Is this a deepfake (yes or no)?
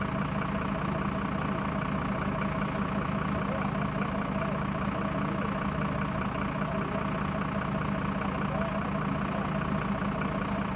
no